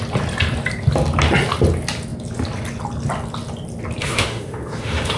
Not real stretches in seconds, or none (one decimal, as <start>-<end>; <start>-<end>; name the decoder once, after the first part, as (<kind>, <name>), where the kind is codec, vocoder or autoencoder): 4.0-5.2 (autoencoder, DAC-VAE)